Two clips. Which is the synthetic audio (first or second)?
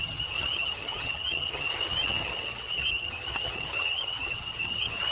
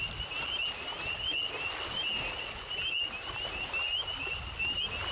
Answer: first